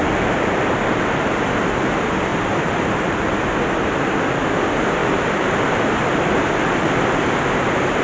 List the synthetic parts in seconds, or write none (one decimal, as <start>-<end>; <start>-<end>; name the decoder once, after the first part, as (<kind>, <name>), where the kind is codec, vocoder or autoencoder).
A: 2.3-3.4 (vocoder, BigVGAN v2); 5.0-6.5

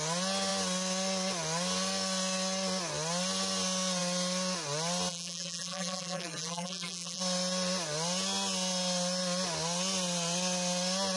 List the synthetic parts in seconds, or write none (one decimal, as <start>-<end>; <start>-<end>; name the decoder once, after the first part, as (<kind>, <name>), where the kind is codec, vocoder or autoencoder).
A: 5.1-7.2 (vocoder, BigVGAN v2)